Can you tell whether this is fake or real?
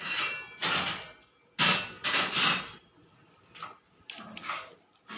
real